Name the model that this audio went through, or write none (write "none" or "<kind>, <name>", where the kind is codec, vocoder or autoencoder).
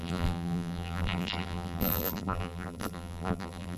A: vocoder, BigVGAN v2